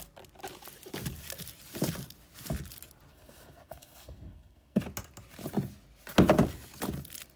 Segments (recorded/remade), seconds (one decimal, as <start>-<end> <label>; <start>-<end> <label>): 0.0-3.1 recorded; 3.1-4.8 remade; 4.8-7.4 recorded